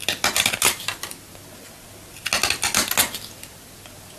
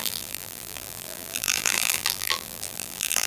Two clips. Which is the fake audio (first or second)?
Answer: second